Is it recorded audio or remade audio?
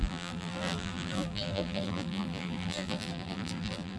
remade